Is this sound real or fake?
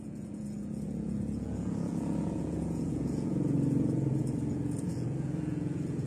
fake